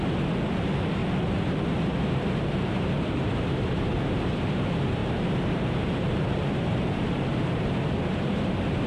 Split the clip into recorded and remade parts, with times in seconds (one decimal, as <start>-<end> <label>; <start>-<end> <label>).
0.0-1.0 recorded; 1.0-4.4 remade; 4.4-5.0 recorded; 5.0-7.9 remade; 7.9-8.9 recorded